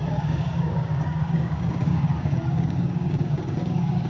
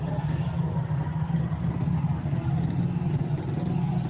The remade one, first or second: first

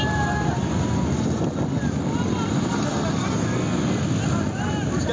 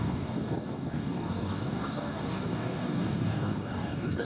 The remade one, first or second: second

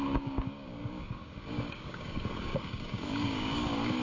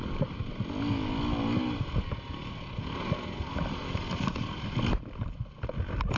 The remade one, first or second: first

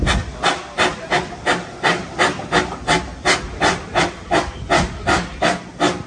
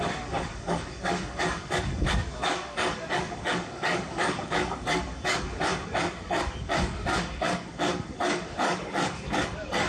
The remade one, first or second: second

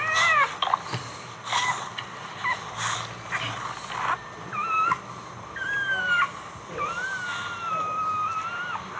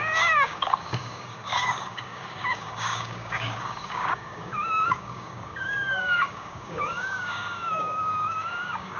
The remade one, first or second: second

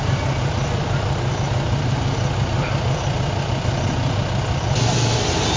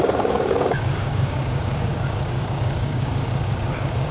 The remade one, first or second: second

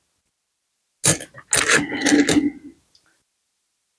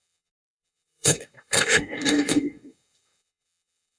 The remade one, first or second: second